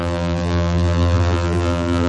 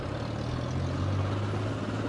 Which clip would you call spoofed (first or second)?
first